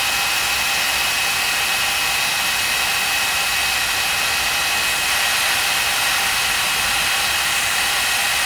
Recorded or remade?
recorded